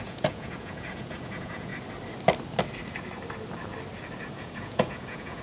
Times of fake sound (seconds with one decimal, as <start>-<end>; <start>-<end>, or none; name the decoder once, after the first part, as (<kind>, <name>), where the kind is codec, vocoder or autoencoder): 0.0-1.7 (vocoder, Vocos); 4.4-5.4